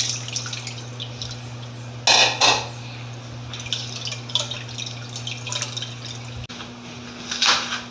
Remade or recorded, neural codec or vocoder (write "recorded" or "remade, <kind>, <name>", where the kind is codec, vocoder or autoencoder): recorded